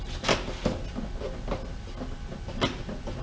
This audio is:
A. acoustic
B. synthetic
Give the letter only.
A